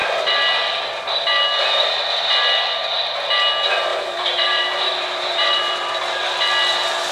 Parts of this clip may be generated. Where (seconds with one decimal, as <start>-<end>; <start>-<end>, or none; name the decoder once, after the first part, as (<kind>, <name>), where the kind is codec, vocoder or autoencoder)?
3.9-6.0 (vocoder, BigVGAN v2)